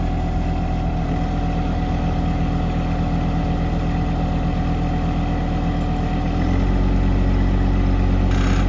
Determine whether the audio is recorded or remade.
recorded